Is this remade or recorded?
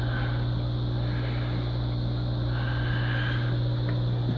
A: recorded